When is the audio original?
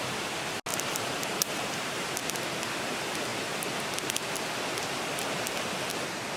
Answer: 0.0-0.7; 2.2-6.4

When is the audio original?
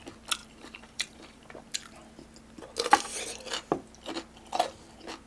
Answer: 0.0-0.4; 1.5-5.3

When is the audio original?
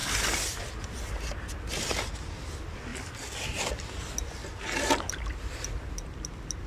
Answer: 0.6-4.4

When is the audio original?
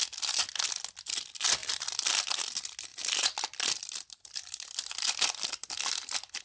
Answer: 0.0-1.6; 2.4-2.9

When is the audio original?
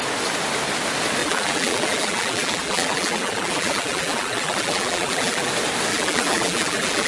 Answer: 0.0-1.2; 5.5-5.9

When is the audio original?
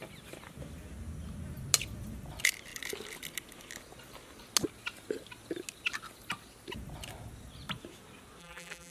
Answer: 0.0-8.4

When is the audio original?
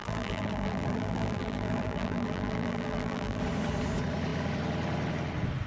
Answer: 3.4-5.7